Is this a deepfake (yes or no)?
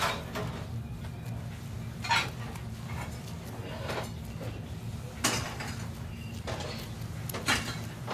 no